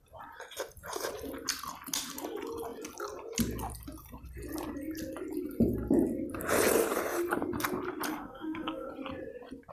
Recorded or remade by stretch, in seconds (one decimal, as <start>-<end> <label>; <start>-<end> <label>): 0.0-8.1 recorded; 8.1-8.9 remade; 8.9-9.7 recorded